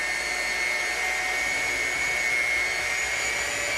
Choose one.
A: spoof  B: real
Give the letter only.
B